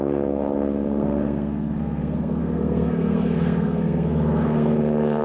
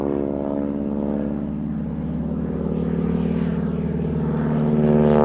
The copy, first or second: first